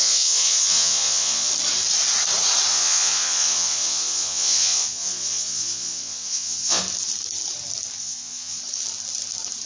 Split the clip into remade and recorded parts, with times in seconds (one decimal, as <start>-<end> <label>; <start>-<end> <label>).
0.0-1.5 remade; 1.5-2.7 recorded; 2.7-6.8 remade; 6.8-8.0 recorded; 8.0-8.6 remade; 8.6-9.7 recorded